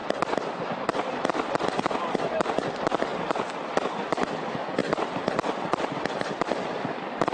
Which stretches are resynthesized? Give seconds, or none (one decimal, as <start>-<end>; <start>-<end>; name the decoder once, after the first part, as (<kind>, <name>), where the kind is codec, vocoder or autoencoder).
none